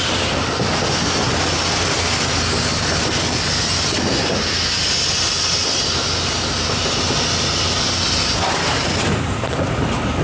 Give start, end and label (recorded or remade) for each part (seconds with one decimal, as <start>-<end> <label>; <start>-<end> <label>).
0.0-10.2 recorded